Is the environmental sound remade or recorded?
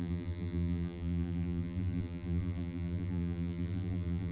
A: remade